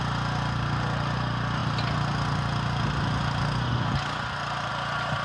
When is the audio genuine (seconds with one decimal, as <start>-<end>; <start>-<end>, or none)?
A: 0.0-5.2